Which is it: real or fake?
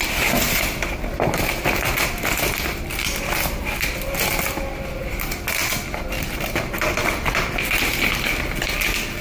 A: real